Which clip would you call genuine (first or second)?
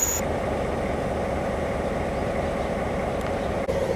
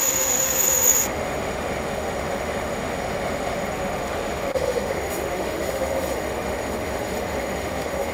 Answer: first